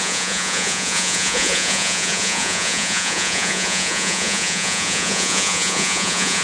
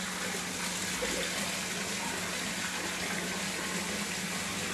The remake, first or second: first